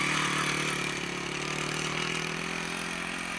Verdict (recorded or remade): recorded